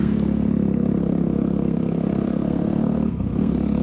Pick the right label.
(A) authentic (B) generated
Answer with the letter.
B